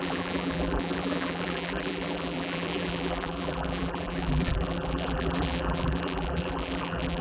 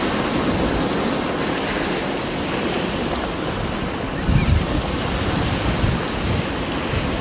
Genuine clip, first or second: second